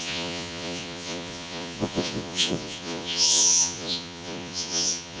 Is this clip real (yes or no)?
no